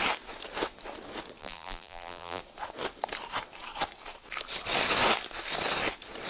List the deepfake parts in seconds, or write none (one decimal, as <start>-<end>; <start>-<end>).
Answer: 1.4-2.4

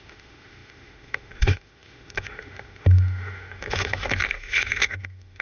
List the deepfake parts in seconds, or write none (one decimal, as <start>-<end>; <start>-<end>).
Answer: 0.0-5.4

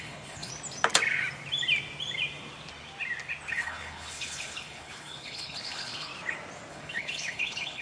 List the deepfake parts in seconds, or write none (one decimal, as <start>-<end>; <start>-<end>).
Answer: 0.0-0.5; 3.5-6.1; 6.7-7.8